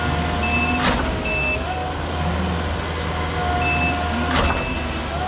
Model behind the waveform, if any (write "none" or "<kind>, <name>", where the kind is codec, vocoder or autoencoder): none